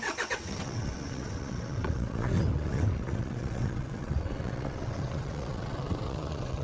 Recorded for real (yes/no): no